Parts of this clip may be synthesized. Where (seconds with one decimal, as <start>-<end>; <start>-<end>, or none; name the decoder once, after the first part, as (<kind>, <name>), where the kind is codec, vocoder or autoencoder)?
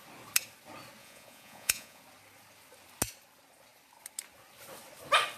1.0-2.0 (vocoder, Vocos)